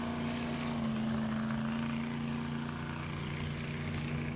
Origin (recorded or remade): recorded